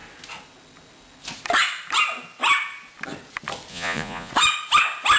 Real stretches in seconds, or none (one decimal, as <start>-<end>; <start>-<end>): 0.0-3.7; 4.3-5.2